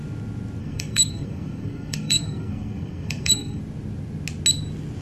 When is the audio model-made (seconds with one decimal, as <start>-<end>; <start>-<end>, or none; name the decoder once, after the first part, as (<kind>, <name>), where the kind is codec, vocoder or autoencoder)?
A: 0.6-3.6 (codec, SNAC)